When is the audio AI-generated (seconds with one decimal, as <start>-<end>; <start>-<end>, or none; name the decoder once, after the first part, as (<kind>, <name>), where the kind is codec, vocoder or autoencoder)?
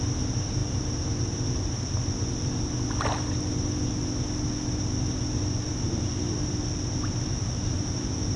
none